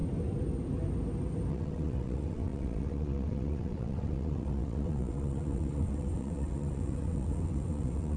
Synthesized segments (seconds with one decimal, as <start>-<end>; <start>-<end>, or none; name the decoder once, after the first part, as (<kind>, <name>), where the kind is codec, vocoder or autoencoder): 1.5-8.2 (vocoder, WaveNeXt)